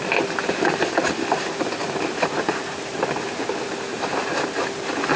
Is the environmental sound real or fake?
real